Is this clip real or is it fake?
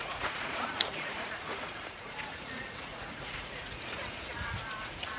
fake